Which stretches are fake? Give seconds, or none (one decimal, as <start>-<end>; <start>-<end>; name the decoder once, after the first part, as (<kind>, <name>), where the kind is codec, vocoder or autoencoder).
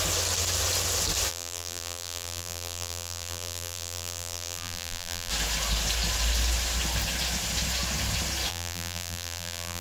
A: 1.3-5.3 (vocoder, BigVGAN v2); 8.5-9.8